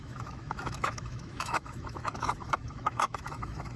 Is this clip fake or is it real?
fake